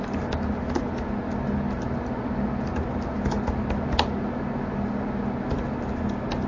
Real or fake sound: real